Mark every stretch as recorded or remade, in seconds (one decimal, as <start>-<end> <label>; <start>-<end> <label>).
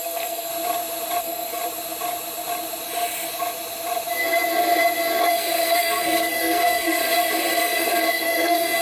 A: 0.0-0.5 remade; 0.5-1.2 recorded; 1.2-1.6 remade; 1.6-5.2 recorded; 5.2-7.0 remade; 7.0-7.5 recorded; 7.5-8.8 remade